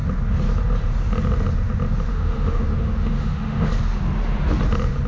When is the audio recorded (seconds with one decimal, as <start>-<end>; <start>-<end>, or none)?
0.0-2.1; 3.7-5.1